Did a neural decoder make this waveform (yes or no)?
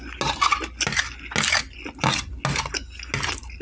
no